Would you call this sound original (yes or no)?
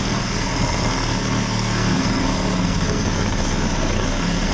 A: no